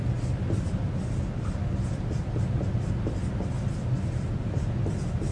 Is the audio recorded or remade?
recorded